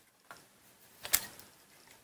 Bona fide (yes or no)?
yes